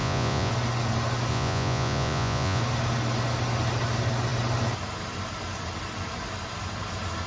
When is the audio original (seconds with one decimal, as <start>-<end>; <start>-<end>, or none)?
0.5-1.3; 2.6-7.3